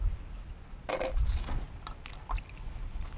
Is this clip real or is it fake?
real